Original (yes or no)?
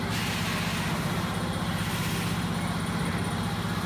yes